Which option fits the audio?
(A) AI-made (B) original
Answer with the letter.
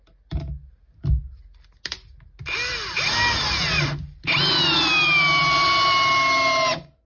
B